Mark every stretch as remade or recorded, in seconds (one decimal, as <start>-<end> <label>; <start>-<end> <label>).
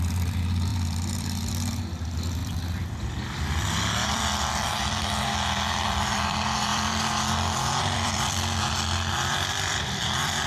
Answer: 0.0-10.5 remade